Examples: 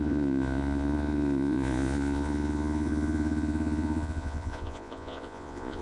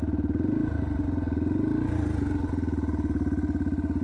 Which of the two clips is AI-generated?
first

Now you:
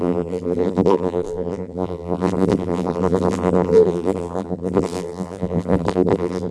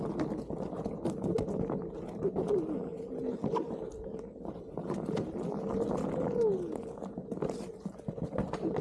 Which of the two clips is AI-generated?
first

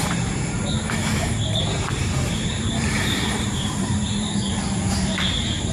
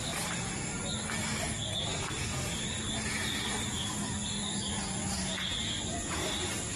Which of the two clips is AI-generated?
first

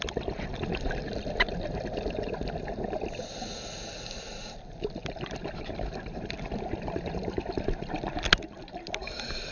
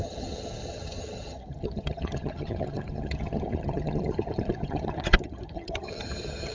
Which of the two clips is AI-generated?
second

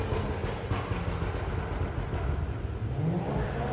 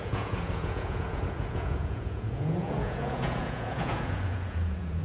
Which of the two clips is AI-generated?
second